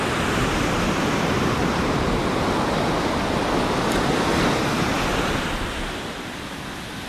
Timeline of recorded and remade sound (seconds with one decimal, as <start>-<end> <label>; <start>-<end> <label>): 0.0-7.1 recorded